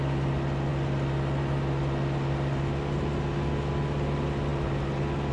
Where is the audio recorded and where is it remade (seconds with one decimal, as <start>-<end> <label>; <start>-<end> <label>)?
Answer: 0.0-5.3 recorded